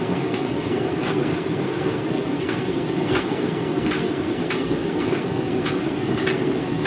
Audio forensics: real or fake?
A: fake